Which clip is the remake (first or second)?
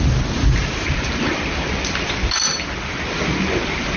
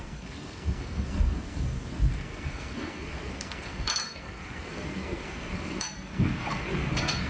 second